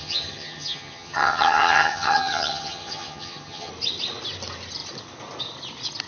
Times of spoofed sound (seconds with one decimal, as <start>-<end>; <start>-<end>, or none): 0.0-3.7